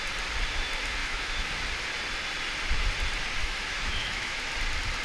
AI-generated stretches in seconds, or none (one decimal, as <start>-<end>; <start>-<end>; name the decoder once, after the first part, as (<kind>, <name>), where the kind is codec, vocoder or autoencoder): 1.0-1.5 (autoencoder, DAC-VAE); 3.4-4.4